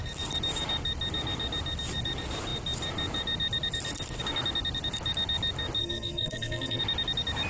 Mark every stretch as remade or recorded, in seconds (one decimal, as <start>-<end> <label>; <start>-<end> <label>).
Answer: 0.0-5.8 recorded; 5.8-6.8 remade; 6.8-7.5 recorded